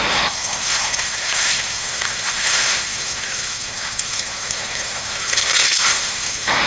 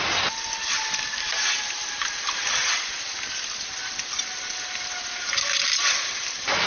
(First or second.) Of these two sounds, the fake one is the first